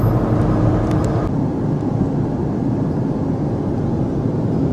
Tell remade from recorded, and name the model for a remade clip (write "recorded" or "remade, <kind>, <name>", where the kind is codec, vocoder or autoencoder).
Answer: recorded